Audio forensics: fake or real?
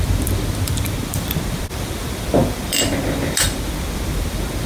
fake